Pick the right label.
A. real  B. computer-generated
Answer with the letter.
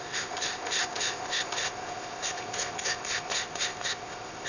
B